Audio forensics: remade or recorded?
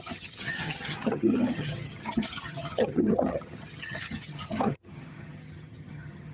remade